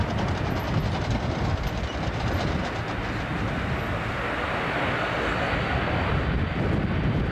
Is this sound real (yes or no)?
yes